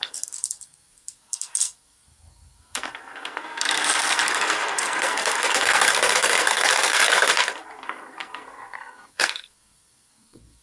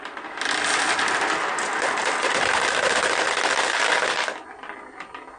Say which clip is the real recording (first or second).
second